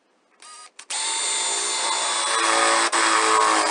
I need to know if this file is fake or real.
real